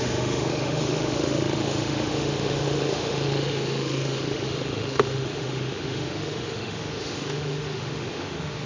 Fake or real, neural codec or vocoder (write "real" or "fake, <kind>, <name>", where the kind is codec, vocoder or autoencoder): fake, autoencoder, DAC-VAE